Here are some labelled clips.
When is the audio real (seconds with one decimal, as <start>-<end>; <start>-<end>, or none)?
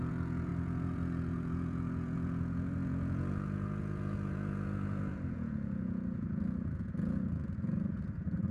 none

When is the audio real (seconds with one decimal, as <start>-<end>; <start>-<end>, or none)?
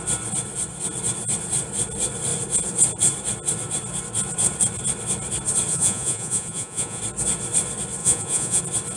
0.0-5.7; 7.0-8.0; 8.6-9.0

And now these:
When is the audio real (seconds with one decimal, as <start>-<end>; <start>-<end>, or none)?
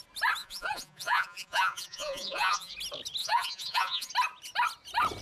0.0-0.4; 2.7-3.2; 4.1-5.2